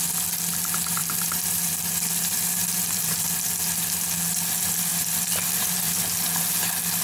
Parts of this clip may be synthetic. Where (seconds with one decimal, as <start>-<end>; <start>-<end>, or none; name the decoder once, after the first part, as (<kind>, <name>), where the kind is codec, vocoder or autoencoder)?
1.0-3.3 (vocoder, BigVGAN v2); 4.9-6.0